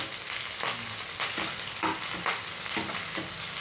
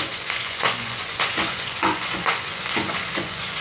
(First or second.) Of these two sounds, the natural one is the first